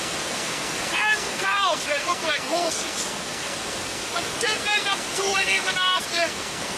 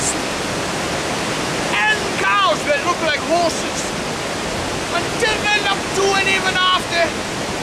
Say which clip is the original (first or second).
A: second